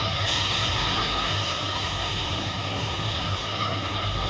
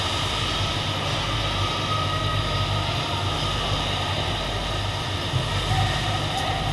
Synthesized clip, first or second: first